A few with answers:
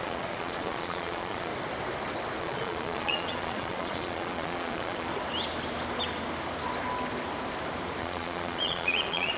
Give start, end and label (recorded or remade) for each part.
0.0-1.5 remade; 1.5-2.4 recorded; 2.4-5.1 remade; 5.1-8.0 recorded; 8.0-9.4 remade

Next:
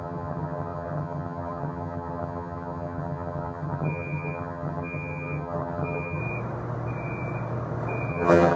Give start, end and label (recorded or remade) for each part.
0.0-6.2 remade; 6.2-8.1 recorded; 8.1-8.6 remade

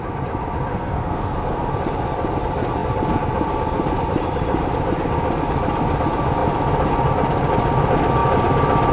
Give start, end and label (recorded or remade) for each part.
0.0-0.7 recorded; 0.7-1.7 remade; 1.7-8.9 recorded

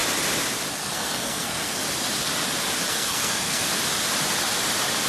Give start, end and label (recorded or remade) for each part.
0.0-0.7 recorded; 0.7-1.8 remade; 1.8-2.9 recorded; 2.9-3.7 remade; 3.7-5.1 recorded

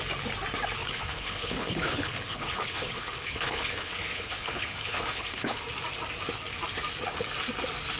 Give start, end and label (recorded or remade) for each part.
0.0-0.8 recorded; 0.8-5.6 remade; 5.6-8.0 recorded

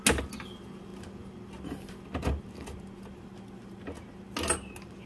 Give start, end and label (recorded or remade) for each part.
0.0-5.1 recorded

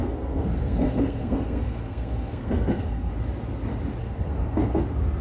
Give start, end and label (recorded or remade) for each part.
0.0-3.1 remade; 3.1-4.0 recorded; 4.0-4.8 remade; 4.8-5.2 recorded

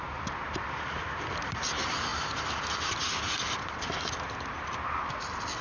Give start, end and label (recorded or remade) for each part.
0.0-5.6 recorded